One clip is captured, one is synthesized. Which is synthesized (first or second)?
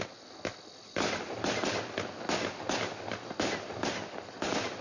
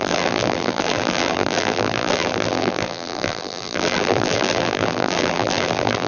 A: second